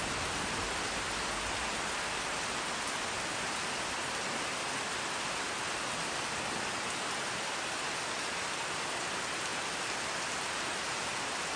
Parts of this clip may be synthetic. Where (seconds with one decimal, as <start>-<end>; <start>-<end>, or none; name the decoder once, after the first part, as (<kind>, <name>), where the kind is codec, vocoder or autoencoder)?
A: none